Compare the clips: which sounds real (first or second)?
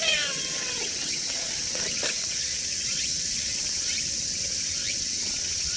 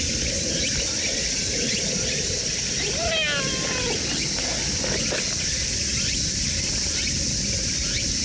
second